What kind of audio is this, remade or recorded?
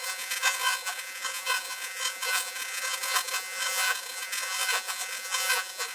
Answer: remade